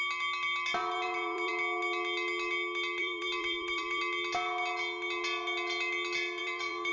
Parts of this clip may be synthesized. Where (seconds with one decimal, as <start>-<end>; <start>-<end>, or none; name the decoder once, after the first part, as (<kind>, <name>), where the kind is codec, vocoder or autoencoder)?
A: 0.8-1.5 (vocoder, BigVGAN v2); 3.0-4.0; 6.4-6.9